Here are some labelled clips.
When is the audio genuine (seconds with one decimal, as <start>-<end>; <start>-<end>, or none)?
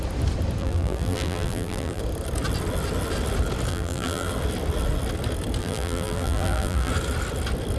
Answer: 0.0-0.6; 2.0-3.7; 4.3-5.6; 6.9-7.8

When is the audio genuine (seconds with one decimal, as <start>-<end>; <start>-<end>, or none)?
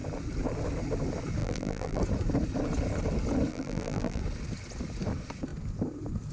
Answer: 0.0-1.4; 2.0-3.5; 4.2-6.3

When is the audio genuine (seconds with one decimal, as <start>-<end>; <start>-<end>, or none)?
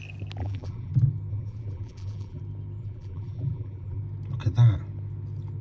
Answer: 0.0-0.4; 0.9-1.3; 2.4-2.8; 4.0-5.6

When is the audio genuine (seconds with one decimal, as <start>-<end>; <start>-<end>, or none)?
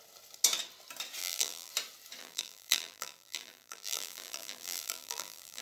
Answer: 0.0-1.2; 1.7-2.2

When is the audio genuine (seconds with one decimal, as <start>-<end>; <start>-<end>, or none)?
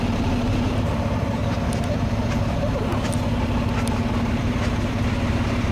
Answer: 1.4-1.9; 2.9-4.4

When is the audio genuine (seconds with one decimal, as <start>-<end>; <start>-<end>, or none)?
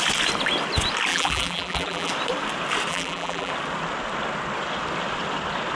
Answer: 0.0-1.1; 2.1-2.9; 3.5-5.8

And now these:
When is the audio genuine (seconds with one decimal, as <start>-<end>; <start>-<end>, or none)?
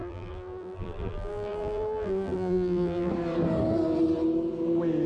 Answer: 3.1-5.1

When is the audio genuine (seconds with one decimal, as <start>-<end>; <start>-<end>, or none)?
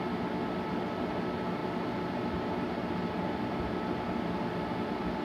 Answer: 0.0-1.6; 3.5-5.2